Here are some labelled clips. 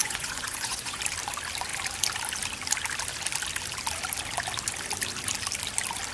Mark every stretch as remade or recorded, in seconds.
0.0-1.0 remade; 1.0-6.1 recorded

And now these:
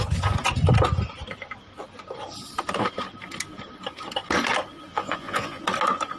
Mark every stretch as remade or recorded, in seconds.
0.0-4.9 recorded; 4.9-5.6 remade; 5.6-6.2 recorded